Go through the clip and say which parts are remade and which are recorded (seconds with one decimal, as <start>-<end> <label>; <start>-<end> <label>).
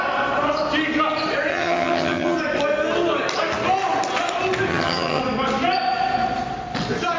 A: 0.0-1.5 recorded; 1.5-2.4 remade; 2.4-4.7 recorded; 4.7-5.2 remade; 5.2-7.2 recorded